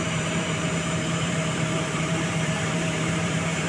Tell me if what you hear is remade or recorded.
remade